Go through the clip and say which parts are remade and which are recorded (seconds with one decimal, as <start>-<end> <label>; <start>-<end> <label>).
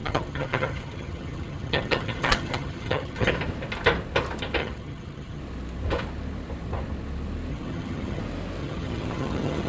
0.0-3.3 remade; 3.3-4.6 recorded; 4.6-5.4 remade; 5.4-7.5 recorded; 7.5-8.2 remade; 8.2-8.6 recorded; 8.6-9.7 remade